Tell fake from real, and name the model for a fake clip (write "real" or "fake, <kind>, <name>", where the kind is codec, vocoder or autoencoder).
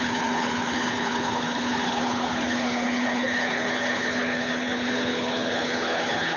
fake, codec, HILCodec